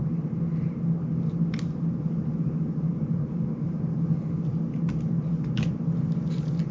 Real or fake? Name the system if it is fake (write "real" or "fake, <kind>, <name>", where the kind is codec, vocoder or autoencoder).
real